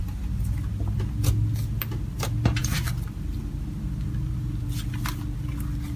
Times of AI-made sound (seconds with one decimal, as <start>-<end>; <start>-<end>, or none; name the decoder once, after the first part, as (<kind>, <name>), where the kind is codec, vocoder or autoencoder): none